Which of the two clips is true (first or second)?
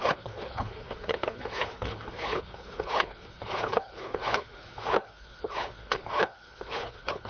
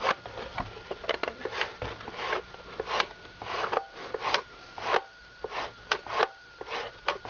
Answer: second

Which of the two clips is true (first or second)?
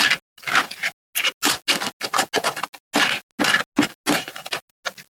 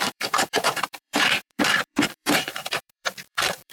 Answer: first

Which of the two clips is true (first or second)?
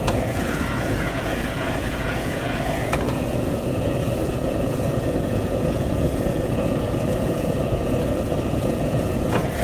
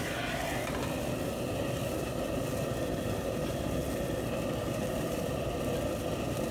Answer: second